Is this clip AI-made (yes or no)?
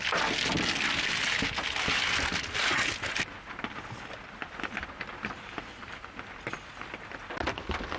no